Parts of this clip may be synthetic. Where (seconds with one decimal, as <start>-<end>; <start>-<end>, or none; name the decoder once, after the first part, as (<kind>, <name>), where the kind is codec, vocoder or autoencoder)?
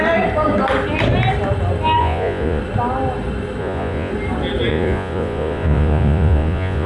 2.0-2.6 (vocoder, Vocos); 3.6-4.1; 4.7-6.9